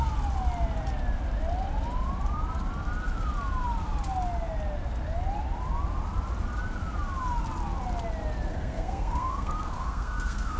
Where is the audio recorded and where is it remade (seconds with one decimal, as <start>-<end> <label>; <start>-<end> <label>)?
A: 0.0-8.5 recorded; 8.5-10.6 remade